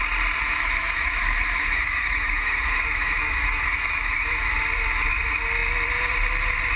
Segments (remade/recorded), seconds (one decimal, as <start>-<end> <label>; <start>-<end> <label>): 0.0-0.4 recorded; 0.4-4.5 remade; 4.5-6.8 recorded